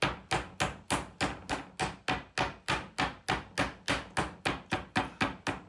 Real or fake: real